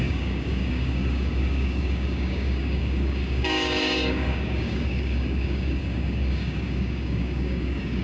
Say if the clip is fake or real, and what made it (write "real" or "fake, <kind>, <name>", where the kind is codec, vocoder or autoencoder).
fake, codec, DAC